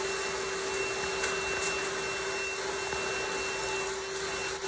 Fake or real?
real